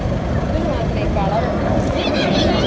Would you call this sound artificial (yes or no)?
no